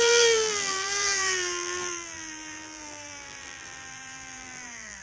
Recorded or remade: remade